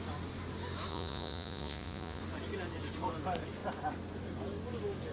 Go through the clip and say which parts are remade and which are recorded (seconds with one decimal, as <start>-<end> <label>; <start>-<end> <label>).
0.0-0.9 recorded; 0.9-2.2 remade; 2.2-5.1 recorded